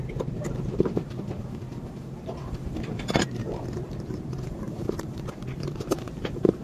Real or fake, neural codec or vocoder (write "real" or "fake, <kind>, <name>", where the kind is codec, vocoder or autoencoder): fake, vocoder, BigVGAN v2